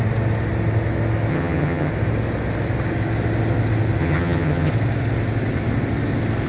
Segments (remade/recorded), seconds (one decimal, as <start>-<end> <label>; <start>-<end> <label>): 0.0-1.3 recorded; 1.3-1.9 remade; 1.9-4.0 recorded; 4.0-4.7 remade; 4.7-6.5 recorded